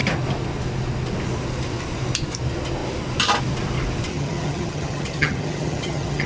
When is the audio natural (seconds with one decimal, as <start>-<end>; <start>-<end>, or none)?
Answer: 0.0-4.1

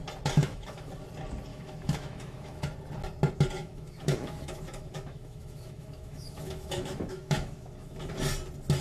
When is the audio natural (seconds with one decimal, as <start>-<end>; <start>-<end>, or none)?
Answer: 0.0-0.4; 0.9-1.5; 2.6-3.6; 8.1-8.8